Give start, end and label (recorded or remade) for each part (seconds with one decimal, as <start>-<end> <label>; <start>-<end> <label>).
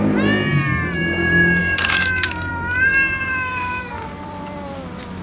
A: 0.0-1.6 recorded; 1.6-2.5 remade; 2.5-3.3 recorded; 3.3-3.9 remade; 3.9-5.2 recorded